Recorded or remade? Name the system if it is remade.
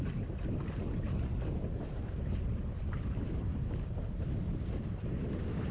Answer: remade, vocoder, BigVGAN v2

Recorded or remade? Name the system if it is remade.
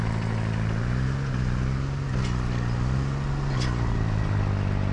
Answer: recorded